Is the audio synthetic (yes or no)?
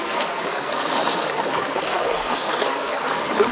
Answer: yes